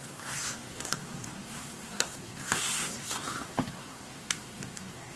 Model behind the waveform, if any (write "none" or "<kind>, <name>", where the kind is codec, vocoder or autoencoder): codec, SNAC